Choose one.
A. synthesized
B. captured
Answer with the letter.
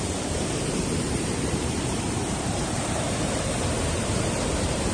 A